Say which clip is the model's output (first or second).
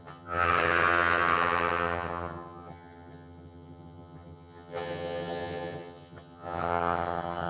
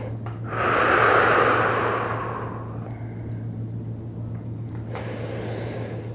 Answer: first